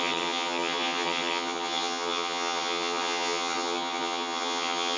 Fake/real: fake